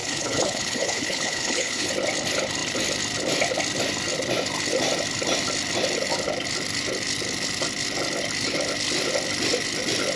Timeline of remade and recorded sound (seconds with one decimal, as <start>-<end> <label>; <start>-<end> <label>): 0.0-1.9 remade; 1.9-10.2 recorded